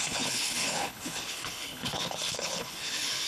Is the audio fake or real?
fake